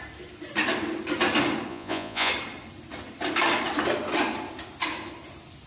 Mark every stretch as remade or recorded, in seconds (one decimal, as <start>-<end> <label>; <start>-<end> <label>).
0.0-1.7 recorded; 1.7-2.3 remade; 2.3-5.7 recorded